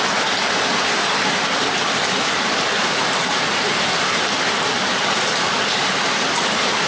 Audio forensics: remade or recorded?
recorded